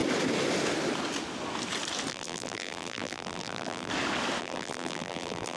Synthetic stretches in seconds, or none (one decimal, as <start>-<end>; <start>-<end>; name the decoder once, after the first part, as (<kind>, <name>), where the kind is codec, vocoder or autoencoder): 2.1-3.9 (vocoder, BigVGAN v2); 4.4-5.6